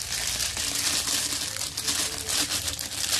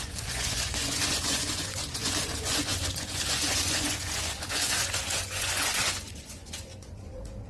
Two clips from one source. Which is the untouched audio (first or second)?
first